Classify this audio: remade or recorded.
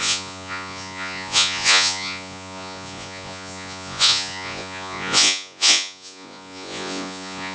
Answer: remade